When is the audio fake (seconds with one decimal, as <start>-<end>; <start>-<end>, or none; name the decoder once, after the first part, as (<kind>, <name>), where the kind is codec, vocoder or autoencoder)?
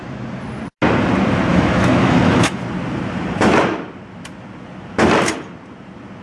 1.5-2.6 (autoencoder, DAC-VAE)